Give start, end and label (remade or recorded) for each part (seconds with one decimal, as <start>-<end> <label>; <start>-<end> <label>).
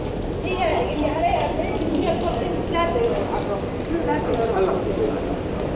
0.0-4.5 recorded; 4.5-5.1 remade; 5.1-5.8 recorded